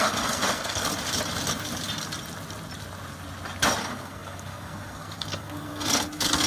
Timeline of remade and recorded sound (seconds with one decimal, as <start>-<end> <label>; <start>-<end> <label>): 0.0-0.9 remade; 0.9-3.8 recorded; 3.8-6.5 remade